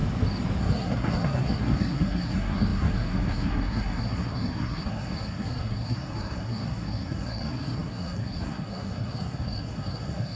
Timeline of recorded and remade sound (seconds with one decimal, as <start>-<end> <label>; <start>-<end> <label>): 0.0-0.6 recorded; 0.6-10.3 remade